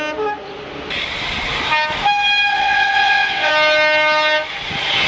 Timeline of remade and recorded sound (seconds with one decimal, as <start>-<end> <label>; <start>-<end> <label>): 0.0-2.5 recorded; 2.5-3.5 remade; 3.5-5.1 recorded